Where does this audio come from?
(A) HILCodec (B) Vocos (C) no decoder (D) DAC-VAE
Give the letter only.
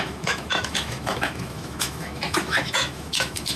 D